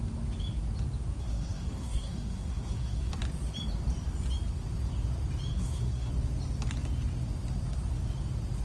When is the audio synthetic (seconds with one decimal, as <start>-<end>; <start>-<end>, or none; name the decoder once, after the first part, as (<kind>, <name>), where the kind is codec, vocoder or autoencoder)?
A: 1.2-3.1 (codec, SNAC); 5.5-6.1